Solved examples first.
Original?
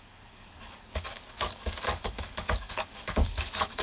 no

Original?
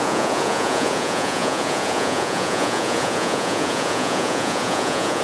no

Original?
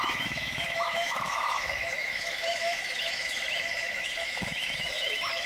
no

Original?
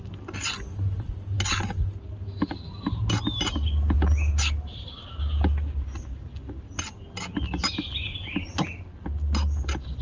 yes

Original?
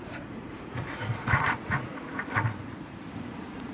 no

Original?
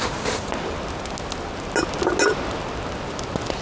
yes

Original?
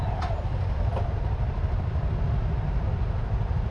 yes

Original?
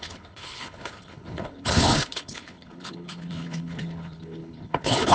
no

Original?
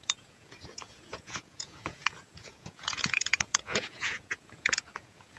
no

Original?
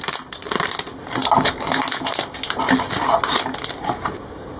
yes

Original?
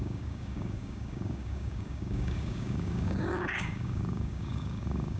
no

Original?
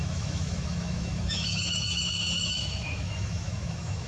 no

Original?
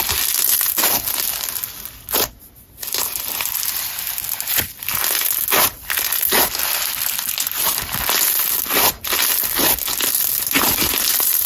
yes